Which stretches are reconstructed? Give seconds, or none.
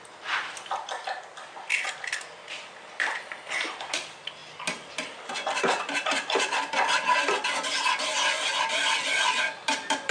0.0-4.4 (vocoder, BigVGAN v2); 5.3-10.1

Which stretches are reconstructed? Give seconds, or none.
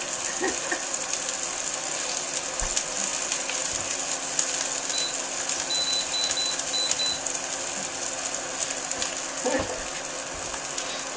none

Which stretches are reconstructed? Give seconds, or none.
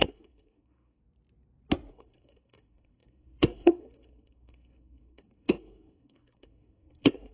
0.0-1.0 (codec, SNAC); 1.9-7.3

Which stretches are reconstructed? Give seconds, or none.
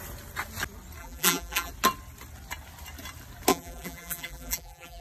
1.0-1.7 (vocoder, BigVGAN v2); 3.5-5.0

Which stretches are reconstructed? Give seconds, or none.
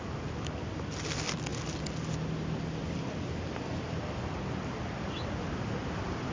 none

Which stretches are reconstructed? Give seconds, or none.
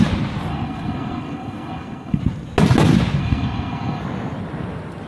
0.5-2.2 (codec, SNAC); 3.2-4.0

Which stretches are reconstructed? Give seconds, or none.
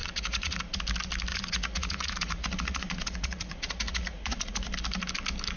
0.0-0.8 (vocoder, Vocos); 1.3-4.7